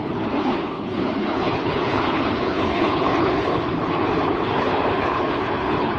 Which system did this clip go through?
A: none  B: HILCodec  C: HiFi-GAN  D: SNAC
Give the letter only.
B